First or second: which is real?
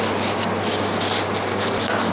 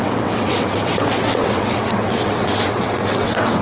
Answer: first